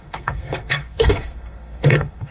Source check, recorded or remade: remade